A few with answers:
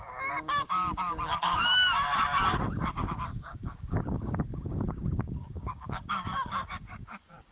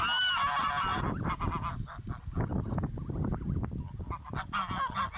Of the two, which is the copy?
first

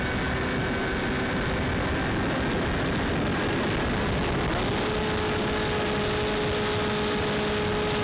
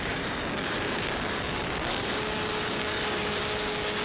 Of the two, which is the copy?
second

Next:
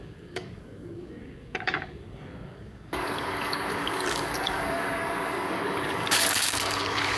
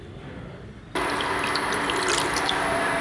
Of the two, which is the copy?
first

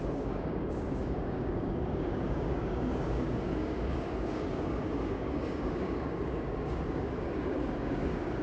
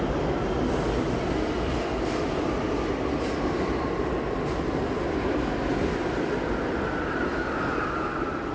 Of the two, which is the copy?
first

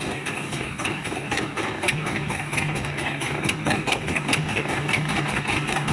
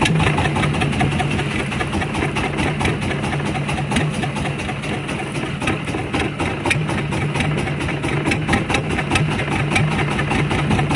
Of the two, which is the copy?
first